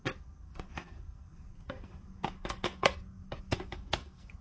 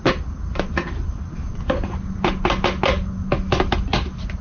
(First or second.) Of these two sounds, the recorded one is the second